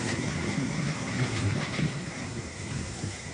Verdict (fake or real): fake